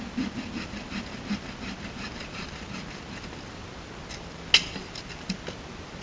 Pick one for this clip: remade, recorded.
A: recorded